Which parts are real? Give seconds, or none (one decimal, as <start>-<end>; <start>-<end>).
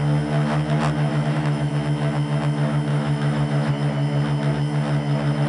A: 0.0-1.1; 1.7-2.9; 3.7-5.5